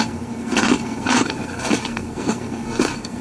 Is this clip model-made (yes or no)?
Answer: yes